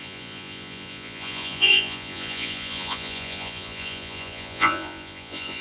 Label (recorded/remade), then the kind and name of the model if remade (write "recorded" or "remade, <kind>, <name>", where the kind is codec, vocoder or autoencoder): remade, vocoder, Vocos